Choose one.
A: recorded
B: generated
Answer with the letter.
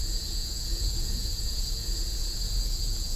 B